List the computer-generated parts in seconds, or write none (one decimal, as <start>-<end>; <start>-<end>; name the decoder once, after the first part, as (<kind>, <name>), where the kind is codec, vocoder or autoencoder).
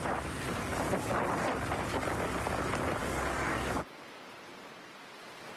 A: 3.0-3.7 (codec, DAC)